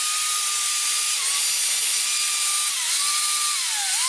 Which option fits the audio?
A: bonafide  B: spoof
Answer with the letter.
A